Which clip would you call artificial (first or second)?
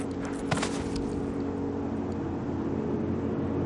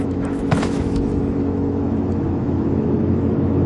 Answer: second